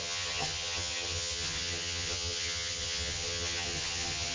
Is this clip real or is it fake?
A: fake